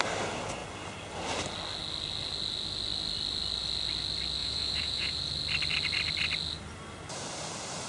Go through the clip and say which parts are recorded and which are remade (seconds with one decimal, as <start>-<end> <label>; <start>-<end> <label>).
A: 0.0-4.4 recorded; 4.4-5.2 remade; 5.2-7.9 recorded